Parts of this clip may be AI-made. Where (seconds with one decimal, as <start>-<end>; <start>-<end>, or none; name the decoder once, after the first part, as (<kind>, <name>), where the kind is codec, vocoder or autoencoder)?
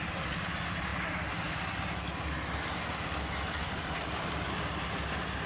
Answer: none